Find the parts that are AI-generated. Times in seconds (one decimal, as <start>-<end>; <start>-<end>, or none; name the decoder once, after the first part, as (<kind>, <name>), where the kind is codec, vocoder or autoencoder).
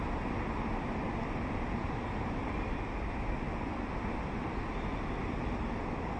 none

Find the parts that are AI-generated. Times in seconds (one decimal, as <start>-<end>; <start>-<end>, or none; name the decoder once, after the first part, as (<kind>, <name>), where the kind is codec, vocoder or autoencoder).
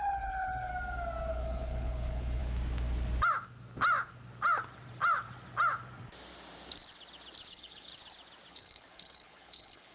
0.0-0.7 (codec, HILCodec); 1.3-2.4; 7.5-7.9; 8.5-9.9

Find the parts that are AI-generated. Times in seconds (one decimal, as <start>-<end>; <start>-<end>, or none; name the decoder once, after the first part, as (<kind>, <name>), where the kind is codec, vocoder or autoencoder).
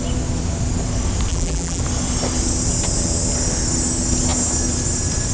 1.3-1.8 (vocoder, BigVGAN v2)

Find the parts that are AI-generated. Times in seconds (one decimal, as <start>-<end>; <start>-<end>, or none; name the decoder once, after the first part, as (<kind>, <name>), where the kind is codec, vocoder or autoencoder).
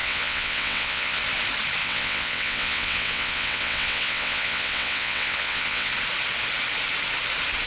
0.0-1.2 (vocoder, WaveNeXt); 1.8-5.9